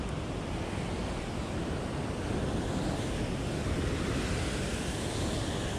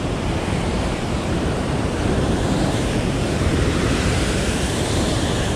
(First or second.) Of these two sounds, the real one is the first